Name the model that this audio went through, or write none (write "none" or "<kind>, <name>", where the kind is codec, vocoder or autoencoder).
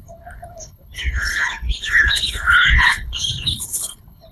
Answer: codec, HILCodec